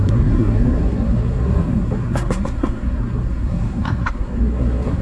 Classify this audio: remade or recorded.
remade